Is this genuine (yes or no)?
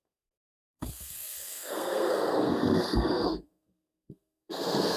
no